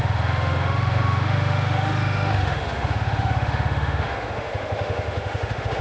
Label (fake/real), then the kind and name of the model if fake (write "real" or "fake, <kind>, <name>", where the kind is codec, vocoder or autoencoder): fake, autoencoder, DAC-VAE